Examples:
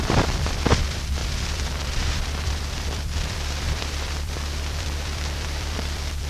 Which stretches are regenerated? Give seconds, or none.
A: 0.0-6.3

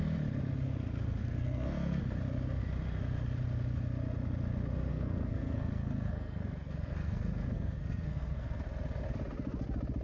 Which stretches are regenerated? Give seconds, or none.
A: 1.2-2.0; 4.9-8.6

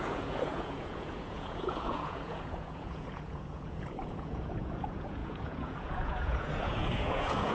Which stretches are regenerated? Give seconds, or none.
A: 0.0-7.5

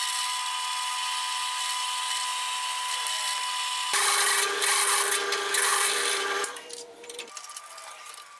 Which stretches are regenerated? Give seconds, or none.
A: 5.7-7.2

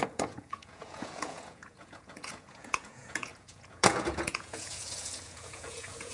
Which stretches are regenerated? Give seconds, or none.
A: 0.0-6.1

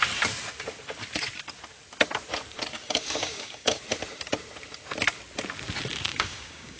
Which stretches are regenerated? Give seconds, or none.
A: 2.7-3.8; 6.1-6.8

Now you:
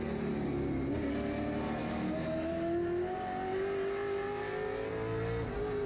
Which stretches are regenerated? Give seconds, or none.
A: none

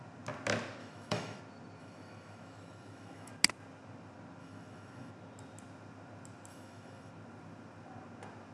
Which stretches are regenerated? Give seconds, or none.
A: 0.8-1.4; 1.8-3.3; 4.4-5.1; 6.5-7.1